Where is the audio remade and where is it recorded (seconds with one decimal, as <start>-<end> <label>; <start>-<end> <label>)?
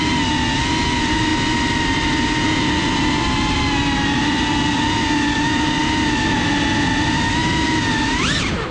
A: 0.0-8.7 recorded